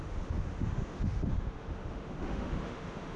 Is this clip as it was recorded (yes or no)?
no